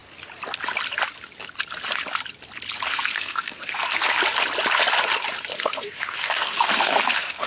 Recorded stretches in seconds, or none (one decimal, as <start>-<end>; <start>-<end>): 0.0-2.9; 4.2-5.5

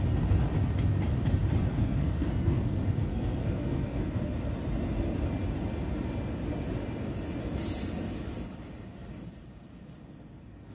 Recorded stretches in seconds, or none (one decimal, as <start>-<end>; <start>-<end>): 0.0-1.7; 4.3-10.7

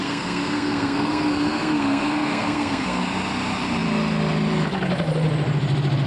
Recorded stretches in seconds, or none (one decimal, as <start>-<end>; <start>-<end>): 3.0-6.1

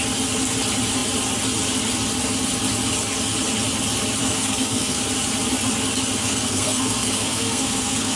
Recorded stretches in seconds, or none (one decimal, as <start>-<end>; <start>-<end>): 0.0-4.2; 5.0-6.2

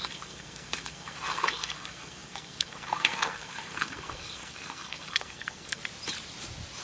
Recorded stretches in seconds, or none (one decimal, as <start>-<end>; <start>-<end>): 5.8-6.8